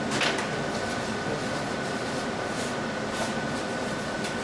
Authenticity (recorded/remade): recorded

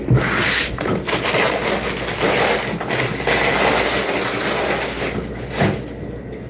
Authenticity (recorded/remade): recorded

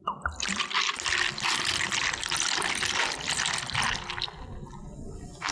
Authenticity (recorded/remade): recorded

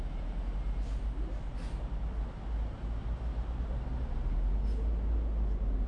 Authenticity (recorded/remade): recorded